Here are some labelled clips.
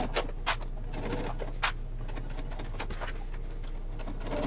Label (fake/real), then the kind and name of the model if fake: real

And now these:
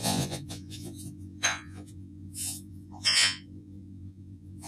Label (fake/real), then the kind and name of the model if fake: fake, vocoder, Vocos